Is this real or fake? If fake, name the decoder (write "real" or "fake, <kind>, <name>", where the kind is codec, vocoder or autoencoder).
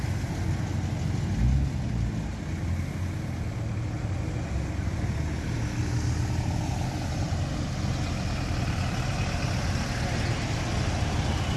real